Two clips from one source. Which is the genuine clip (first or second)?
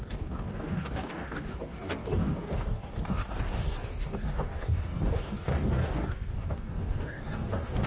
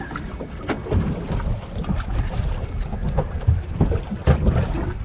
second